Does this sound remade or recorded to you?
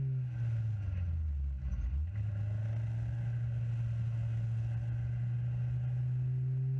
recorded